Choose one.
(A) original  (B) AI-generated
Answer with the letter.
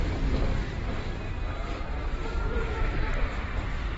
B